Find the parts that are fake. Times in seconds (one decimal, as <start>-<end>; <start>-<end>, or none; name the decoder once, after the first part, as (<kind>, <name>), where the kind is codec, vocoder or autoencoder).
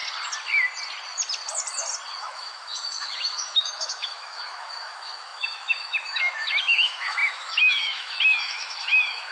2.2-9.3 (autoencoder, DAC-VAE)